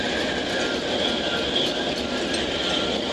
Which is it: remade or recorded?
recorded